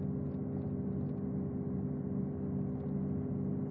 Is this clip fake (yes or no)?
no